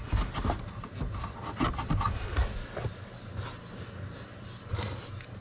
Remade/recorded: recorded